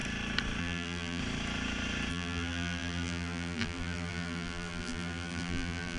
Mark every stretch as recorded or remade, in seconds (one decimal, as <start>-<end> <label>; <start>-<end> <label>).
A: 0.0-0.6 recorded; 0.6-1.2 remade; 1.2-2.1 recorded; 2.1-6.0 remade